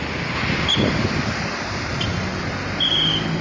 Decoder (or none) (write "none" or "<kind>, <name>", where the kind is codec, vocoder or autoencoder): none